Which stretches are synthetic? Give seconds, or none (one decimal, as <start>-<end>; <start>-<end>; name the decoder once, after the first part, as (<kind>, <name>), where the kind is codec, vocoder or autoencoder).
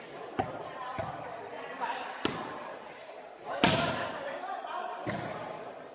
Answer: none